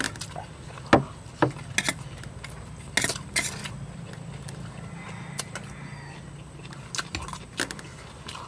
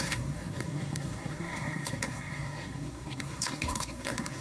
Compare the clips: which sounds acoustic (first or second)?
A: first